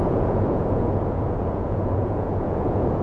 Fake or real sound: fake